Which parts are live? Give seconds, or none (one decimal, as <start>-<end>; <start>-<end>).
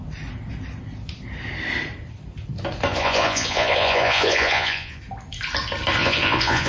0.0-2.9; 5.0-6.0